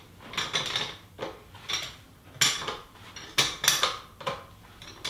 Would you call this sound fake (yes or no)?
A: no